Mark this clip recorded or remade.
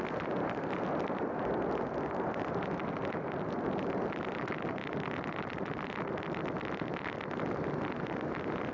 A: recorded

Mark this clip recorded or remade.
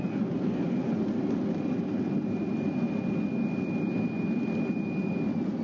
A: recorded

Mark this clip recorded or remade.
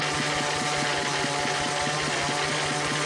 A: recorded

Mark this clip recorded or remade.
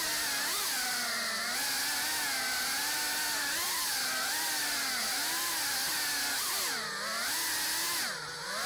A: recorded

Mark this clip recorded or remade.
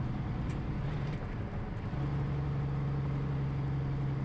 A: recorded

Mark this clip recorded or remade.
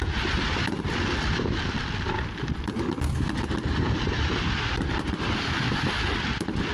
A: remade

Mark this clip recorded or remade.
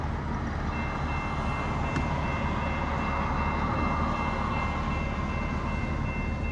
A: recorded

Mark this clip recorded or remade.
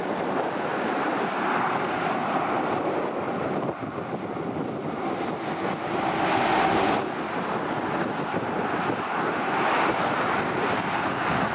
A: recorded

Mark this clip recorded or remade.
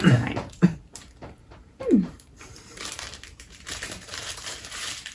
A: remade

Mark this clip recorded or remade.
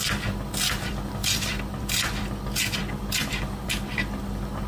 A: remade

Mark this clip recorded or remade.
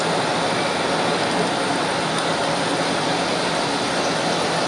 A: recorded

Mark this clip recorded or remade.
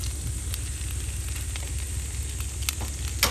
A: recorded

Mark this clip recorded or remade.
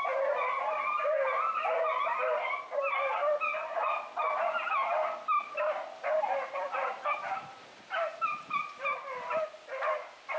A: recorded